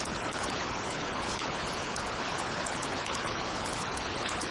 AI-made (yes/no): yes